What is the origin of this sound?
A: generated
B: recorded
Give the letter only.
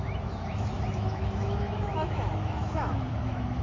A